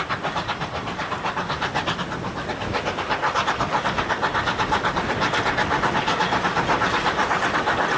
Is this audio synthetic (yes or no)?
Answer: no